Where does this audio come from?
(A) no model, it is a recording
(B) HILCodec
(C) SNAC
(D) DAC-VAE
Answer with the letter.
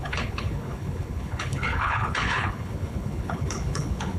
B